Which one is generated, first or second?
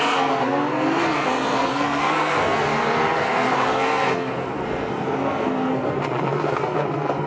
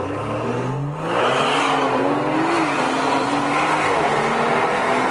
first